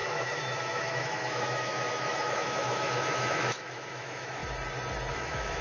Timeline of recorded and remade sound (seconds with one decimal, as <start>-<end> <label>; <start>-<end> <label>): 0.0-4.4 remade; 4.4-5.1 recorded; 5.1-5.6 remade